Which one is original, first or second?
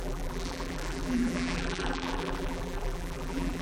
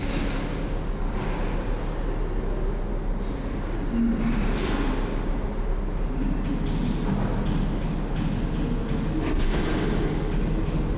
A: second